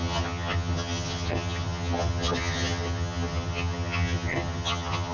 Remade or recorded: remade